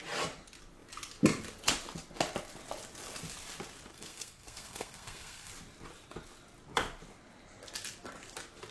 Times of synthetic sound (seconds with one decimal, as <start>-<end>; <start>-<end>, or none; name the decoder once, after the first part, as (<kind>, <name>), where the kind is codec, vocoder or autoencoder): 3.9-5.5 (codec, SNAC)